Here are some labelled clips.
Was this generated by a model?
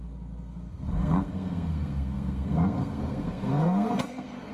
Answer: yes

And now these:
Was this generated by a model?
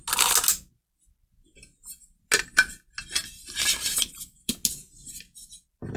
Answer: no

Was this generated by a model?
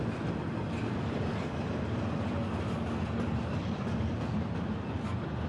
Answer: no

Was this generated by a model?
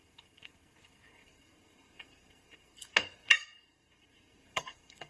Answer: yes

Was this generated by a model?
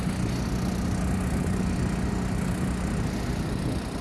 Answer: no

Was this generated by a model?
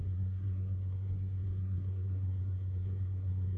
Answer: yes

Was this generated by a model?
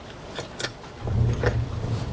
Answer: no